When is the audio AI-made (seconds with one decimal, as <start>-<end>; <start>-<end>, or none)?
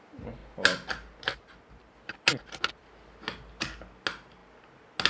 none